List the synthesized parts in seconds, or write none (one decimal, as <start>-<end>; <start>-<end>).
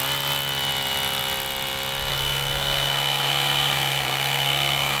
2.1-5.0